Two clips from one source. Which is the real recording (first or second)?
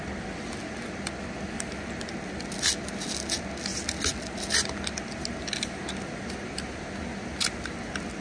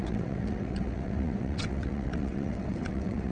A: first